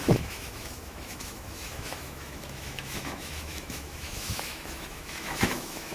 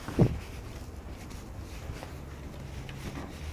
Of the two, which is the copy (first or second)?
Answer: first